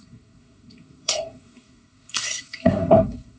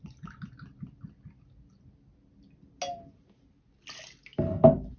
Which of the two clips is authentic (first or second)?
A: second